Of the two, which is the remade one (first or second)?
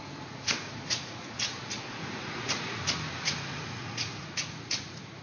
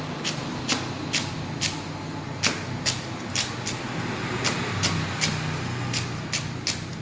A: first